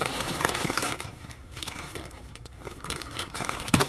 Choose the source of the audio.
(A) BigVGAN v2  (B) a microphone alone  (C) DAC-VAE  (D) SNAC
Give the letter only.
D